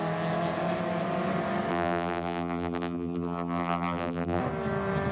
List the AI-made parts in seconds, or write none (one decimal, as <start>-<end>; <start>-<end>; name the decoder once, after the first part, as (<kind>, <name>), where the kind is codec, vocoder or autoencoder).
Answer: 1.7-4.4 (vocoder, BigVGAN v2)